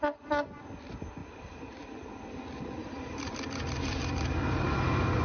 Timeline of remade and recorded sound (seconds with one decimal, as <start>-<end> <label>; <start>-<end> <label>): 0.0-1.2 recorded; 1.2-2.1 remade; 2.1-2.8 recorded; 2.8-5.2 remade